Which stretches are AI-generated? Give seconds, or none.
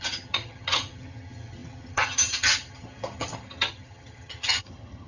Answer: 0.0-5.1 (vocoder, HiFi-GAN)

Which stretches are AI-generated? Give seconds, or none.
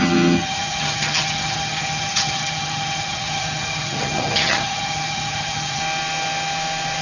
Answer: 0.0-5.8 (vocoder, HiFi-GAN)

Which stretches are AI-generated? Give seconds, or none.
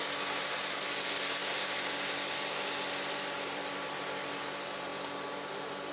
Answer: 0.0-5.9 (vocoder, BigVGAN v2)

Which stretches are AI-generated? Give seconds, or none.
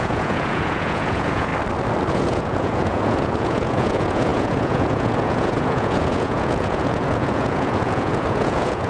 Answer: 0.0-1.5 (vocoder, Vocos); 2.1-8.9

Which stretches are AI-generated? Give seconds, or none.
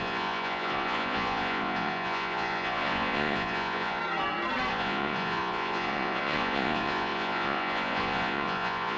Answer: 0.0-4.0 (vocoder, Vocos); 4.7-9.0